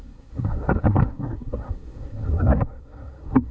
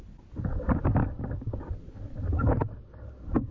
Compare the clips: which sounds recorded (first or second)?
second